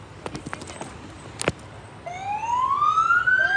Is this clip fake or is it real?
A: real